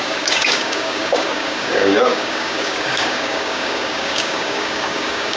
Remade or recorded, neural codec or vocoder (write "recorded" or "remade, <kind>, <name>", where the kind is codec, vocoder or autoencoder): remade, codec, DAC